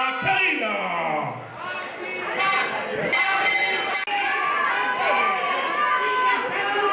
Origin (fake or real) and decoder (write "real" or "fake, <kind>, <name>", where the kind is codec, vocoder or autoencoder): real